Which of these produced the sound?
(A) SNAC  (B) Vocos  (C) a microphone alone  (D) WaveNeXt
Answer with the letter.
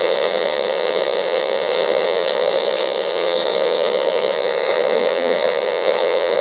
D